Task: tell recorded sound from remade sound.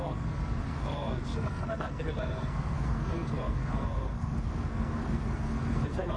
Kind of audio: remade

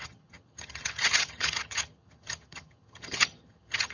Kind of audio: remade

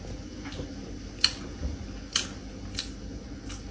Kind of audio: recorded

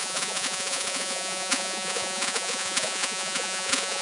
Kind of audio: remade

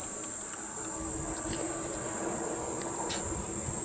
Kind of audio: recorded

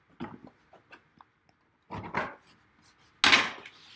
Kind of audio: recorded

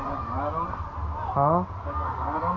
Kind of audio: recorded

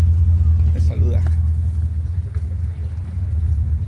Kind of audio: recorded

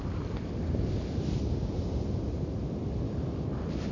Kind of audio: recorded